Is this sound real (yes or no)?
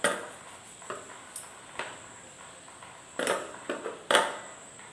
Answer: yes